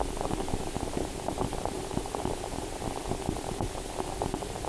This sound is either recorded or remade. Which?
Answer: recorded